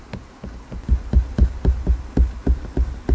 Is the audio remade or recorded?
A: recorded